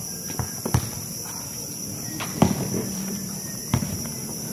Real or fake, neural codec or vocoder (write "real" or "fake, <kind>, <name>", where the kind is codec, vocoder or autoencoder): fake, vocoder, BigVGAN v2